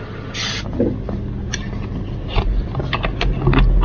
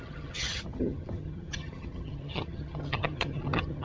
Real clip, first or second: first